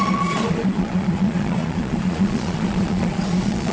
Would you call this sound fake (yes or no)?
yes